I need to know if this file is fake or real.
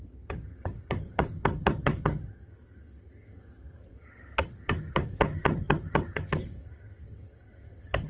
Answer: fake